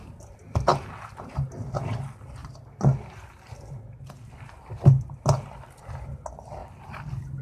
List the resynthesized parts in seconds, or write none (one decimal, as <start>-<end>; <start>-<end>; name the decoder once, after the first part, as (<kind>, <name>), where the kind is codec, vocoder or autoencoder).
none